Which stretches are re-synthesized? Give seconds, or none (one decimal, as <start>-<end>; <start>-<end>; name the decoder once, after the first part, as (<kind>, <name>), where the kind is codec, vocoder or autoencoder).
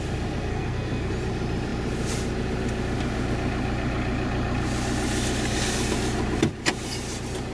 0.5-1.1 (codec, SNAC)